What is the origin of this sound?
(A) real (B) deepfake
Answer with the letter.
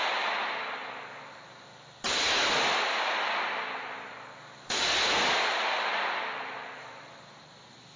A